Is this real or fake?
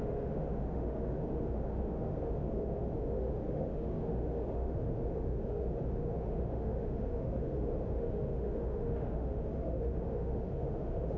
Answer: fake